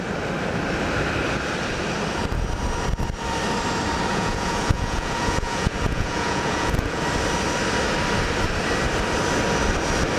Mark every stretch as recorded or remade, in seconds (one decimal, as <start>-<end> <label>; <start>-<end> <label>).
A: 0.0-4.1 recorded; 4.1-7.0 remade; 7.0-10.2 recorded